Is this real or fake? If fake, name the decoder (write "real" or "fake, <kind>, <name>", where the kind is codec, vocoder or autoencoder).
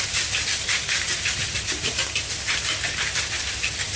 real